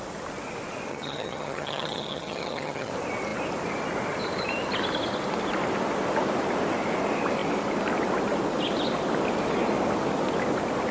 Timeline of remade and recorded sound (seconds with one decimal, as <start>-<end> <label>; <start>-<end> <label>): 0.0-0.9 recorded; 0.9-2.9 remade; 2.9-10.9 recorded